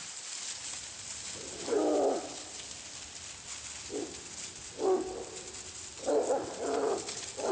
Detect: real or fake real